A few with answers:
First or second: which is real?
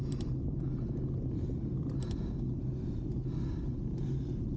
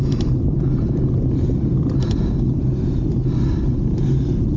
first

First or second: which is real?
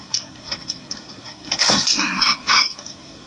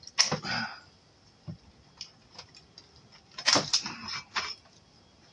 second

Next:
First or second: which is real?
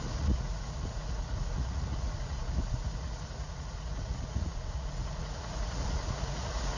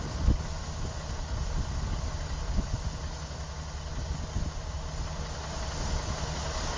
second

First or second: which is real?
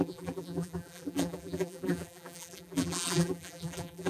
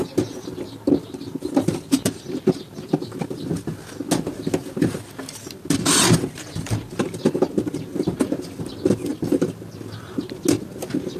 second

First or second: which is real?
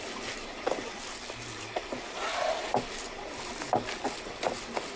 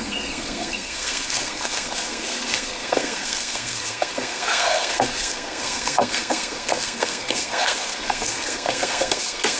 first